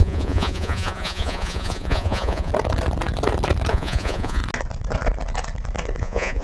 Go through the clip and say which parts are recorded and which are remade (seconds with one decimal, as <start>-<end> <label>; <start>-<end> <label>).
0.0-2.5 remade; 2.5-3.7 recorded; 3.7-4.4 remade; 4.4-6.0 recorded; 6.0-6.4 remade